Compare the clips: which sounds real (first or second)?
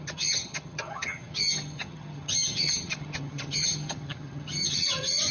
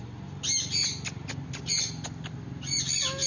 second